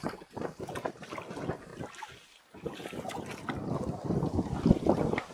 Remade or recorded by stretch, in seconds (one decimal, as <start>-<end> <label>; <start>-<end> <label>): 0.0-1.7 remade; 1.7-5.3 recorded